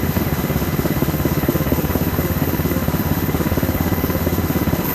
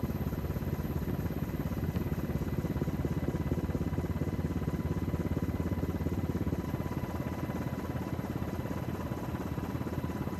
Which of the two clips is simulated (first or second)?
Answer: first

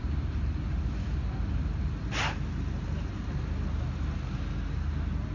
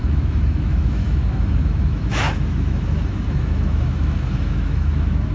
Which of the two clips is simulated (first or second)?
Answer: second